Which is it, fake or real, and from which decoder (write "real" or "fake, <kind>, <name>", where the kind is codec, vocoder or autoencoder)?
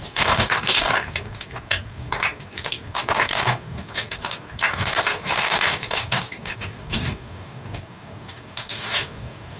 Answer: fake, codec, DAC